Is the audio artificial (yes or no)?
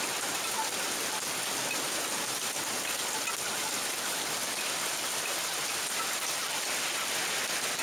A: no